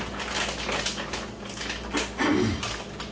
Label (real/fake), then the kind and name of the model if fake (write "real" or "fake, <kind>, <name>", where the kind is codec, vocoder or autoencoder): real